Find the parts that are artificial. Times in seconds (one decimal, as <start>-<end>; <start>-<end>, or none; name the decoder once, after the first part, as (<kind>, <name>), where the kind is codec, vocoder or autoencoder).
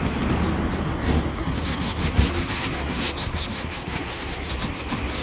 1.4-4.5 (codec, SNAC)